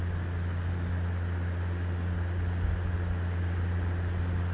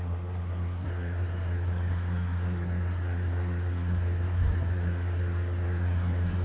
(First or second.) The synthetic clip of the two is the second